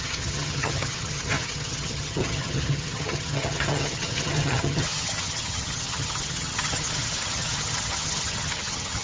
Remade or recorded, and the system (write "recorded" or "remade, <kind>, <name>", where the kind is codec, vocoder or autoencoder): remade, vocoder, HiFi-GAN